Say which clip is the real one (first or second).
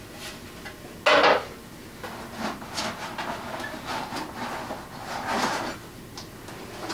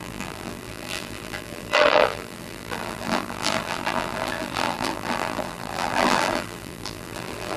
first